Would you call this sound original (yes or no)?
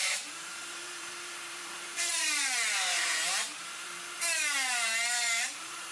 no